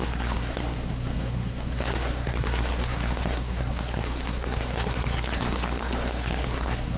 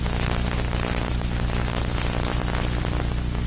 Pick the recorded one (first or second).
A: second